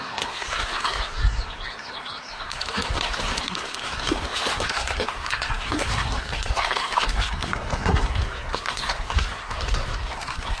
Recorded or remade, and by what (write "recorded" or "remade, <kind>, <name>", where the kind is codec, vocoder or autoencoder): remade, codec, SNAC